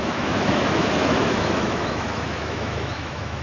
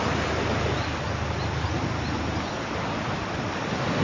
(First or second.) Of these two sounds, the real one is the second